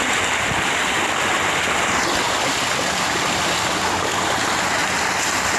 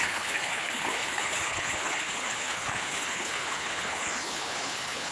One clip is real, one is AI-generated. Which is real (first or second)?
first